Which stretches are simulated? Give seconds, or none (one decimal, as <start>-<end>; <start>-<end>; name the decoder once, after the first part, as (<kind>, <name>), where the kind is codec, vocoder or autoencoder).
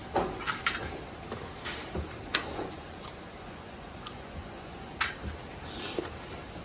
2.5-4.9 (vocoder, Vocos)